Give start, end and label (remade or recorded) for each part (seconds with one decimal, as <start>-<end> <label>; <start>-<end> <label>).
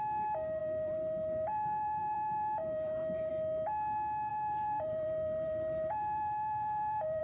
0.0-0.6 recorded; 0.6-3.3 remade; 3.3-4.3 recorded; 4.3-7.2 remade